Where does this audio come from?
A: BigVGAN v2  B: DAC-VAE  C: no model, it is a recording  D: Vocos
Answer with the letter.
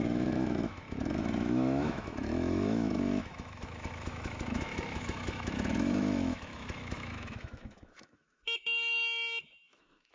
B